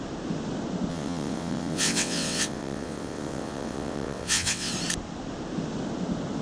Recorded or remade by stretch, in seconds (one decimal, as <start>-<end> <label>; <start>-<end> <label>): 0.0-0.9 recorded; 0.9-4.7 remade; 4.7-6.4 recorded